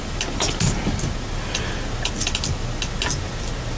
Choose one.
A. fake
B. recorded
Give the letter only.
B